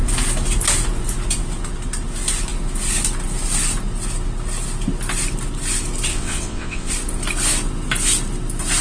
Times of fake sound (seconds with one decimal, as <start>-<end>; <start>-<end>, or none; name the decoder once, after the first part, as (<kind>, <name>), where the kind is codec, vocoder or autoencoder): 6.1-6.9 (vocoder, WaveNeXt)